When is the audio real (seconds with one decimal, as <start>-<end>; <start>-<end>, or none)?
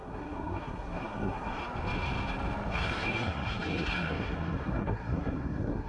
1.6-2.7